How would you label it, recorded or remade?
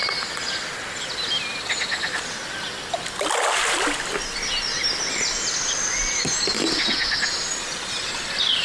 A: recorded